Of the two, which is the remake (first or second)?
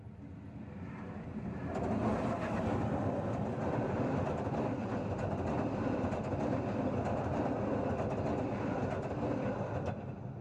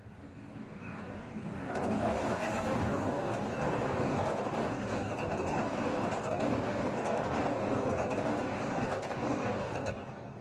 second